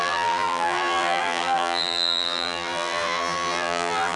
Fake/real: fake